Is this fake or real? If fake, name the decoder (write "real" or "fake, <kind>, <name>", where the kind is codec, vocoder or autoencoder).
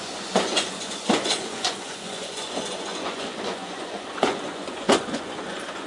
fake, vocoder, Vocos